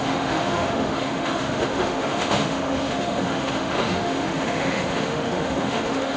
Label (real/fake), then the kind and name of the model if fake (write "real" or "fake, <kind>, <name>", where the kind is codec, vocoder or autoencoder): fake, autoencoder, DAC-VAE